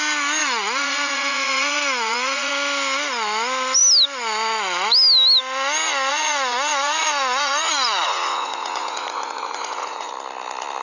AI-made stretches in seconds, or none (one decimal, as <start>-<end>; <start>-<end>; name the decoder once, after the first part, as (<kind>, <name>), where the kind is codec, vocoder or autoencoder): 0.4-2.5 (vocoder, Vocos); 6.1-10.1